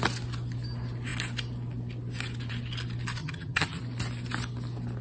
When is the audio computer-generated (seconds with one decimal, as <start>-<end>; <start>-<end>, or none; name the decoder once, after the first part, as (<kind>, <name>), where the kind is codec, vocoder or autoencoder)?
3.2-3.8 (vocoder, HiFi-GAN)